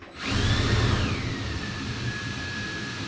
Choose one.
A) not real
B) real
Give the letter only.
B